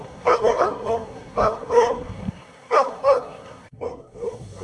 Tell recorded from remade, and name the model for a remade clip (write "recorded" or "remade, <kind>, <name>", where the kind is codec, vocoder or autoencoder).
remade, codec, SNAC